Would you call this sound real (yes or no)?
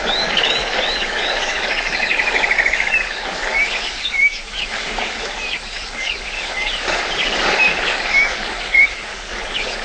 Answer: no